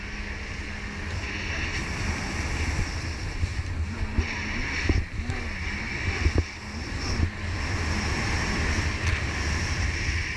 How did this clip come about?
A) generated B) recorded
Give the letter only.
B